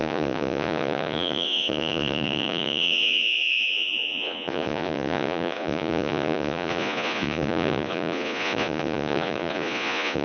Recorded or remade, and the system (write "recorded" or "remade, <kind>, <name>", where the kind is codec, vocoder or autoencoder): remade, vocoder, Vocos